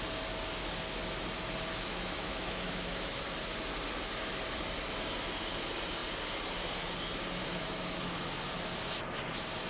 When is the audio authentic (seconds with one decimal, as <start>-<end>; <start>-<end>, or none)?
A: 0.0-1.7; 3.2-7.4; 8.1-9.7